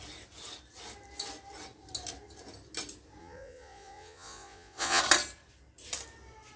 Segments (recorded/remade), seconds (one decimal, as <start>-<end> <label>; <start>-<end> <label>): 0.0-3.2 recorded; 3.2-5.0 remade; 5.0-6.6 recorded